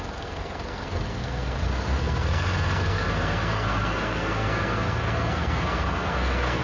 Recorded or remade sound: remade